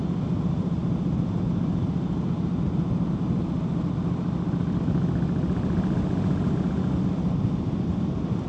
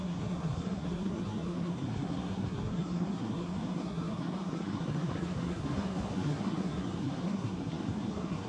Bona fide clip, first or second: first